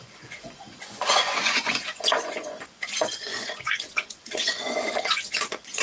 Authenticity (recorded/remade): remade